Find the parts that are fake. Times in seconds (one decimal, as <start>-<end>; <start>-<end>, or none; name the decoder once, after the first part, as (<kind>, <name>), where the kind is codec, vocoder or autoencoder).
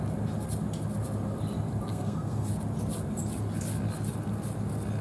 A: 1.9-2.5 (codec, SNAC)